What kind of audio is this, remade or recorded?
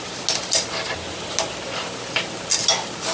recorded